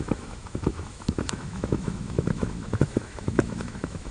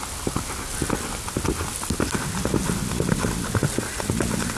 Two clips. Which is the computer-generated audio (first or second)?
first